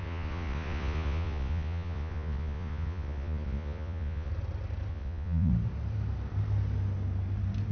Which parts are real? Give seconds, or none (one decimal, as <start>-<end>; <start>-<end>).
4.3-4.9; 5.5-7.7